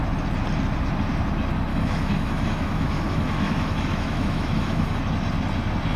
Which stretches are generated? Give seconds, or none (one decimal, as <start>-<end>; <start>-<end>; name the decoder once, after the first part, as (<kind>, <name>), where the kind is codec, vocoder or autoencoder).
1.7-5.0 (autoencoder, DAC-VAE)